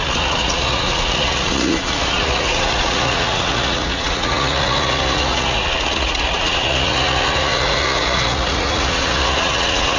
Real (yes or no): no